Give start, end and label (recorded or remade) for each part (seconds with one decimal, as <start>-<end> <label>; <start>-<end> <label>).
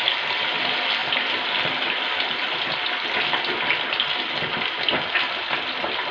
0.0-6.1 recorded